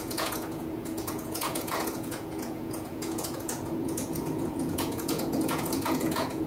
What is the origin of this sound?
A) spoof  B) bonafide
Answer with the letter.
A